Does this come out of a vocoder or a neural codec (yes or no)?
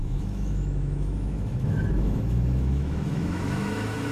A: yes